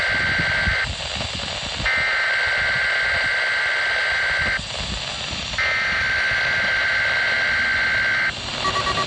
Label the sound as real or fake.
fake